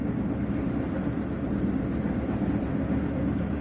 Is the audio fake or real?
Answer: real